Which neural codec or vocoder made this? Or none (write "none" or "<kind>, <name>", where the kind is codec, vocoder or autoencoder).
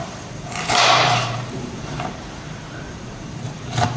vocoder, BigVGAN v2